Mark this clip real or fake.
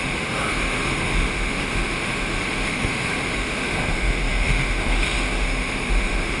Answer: fake